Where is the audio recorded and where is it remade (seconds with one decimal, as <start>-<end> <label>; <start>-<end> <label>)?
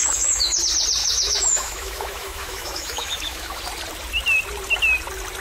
0.0-0.6 remade; 0.6-1.0 recorded; 1.0-3.6 remade; 3.6-5.4 recorded